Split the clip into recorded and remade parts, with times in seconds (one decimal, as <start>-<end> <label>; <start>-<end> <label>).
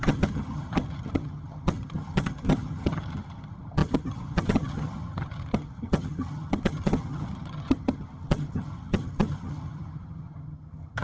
0.0-11.0 remade